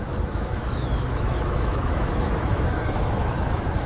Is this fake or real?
fake